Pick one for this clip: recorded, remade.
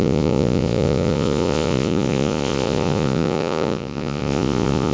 remade